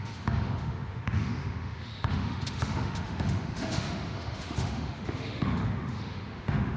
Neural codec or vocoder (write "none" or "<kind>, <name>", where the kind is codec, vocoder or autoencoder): autoencoder, DAC-VAE